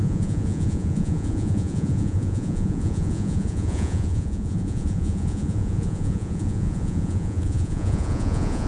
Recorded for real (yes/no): no